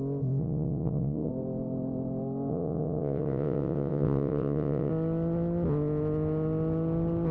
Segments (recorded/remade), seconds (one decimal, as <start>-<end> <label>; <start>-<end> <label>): 0.0-0.4 recorded; 0.4-1.3 remade; 1.3-2.5 recorded; 2.5-4.9 remade; 4.9-7.3 recorded